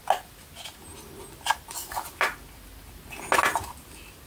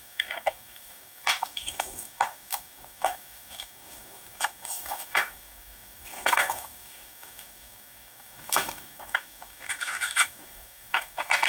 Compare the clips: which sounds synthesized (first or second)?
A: second